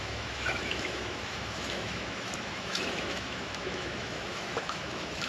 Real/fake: fake